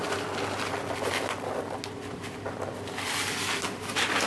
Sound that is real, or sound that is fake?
real